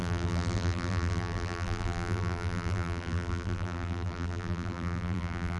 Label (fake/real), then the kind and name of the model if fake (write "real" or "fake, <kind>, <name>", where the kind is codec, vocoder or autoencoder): fake, vocoder, BigVGAN v2